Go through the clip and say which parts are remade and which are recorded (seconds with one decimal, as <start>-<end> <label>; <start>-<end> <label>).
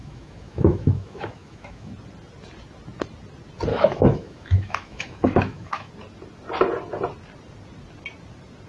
0.0-1.9 remade; 1.9-3.7 recorded; 3.7-5.9 remade; 5.9-8.7 recorded